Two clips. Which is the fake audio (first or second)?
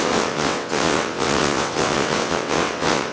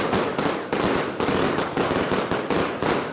first